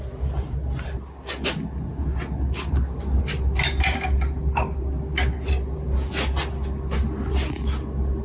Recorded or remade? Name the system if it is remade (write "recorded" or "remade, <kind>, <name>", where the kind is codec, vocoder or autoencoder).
recorded